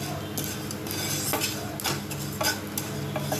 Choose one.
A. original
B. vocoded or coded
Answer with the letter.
A